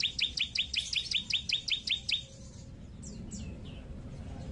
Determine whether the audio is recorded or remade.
recorded